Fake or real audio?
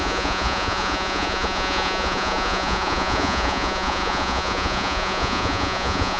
fake